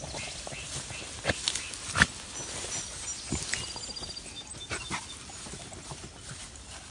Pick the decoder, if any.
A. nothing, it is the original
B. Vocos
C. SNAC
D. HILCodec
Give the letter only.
A